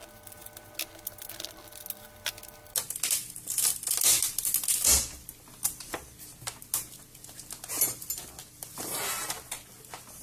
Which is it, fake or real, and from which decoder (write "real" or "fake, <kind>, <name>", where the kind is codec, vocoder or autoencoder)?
real